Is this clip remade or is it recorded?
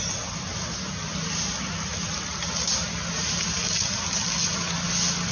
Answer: recorded